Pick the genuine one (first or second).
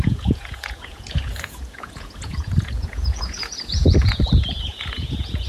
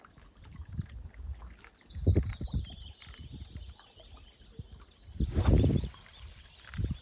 second